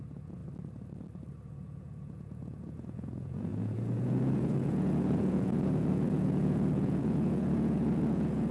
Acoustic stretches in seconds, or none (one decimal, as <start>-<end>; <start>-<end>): 0.4-1.5